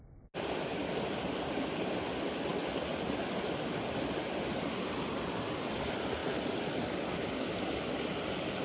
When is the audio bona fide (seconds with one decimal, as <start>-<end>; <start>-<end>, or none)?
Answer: 0.0-8.6